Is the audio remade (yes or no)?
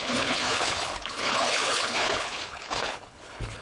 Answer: yes